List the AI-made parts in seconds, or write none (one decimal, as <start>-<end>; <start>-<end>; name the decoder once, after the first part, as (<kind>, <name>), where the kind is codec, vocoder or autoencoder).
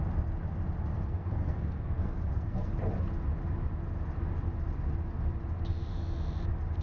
0.9-2.7 (codec, SNAC)